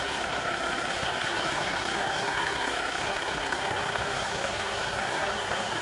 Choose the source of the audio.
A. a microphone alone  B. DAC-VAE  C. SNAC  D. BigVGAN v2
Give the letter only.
C